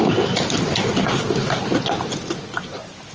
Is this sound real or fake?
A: real